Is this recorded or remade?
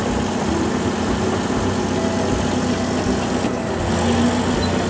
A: recorded